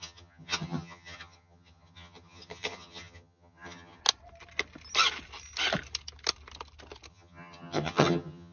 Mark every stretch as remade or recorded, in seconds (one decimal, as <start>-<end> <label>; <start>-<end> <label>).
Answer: 0.0-4.0 remade; 4.0-7.1 recorded; 7.1-8.5 remade